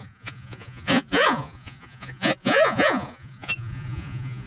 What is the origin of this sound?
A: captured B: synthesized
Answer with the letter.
B